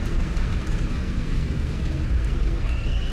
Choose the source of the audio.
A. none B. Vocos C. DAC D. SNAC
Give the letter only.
D